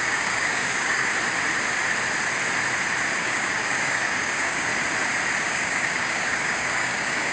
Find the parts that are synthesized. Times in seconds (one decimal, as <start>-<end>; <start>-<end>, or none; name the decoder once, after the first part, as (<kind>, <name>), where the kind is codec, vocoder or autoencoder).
0.0-1.1 (codec, DAC); 3.1-4.7; 5.4-7.3